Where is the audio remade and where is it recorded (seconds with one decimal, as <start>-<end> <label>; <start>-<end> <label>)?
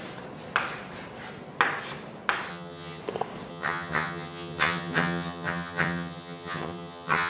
0.0-2.5 recorded; 2.5-3.0 remade; 3.0-3.5 recorded; 3.5-7.3 remade